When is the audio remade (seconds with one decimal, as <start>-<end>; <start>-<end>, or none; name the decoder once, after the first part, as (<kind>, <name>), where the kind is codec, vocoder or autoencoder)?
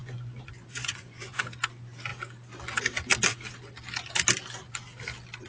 0.0-1.4 (vocoder, Vocos)